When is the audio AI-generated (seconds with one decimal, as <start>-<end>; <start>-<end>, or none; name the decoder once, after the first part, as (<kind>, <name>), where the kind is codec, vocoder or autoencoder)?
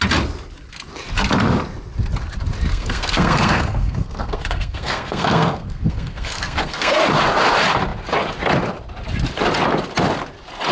2.7-7.0 (codec, SNAC)